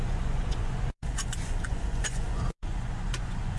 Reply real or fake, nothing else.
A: fake